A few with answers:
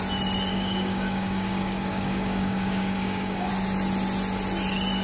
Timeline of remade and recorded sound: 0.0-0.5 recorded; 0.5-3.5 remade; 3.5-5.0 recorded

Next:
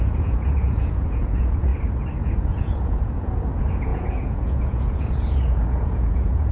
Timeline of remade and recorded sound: 0.0-1.7 remade; 1.7-2.2 recorded; 2.2-6.5 remade

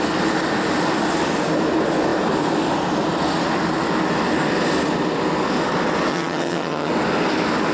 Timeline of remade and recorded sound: 0.0-6.1 recorded; 6.1-6.9 remade; 6.9-7.7 recorded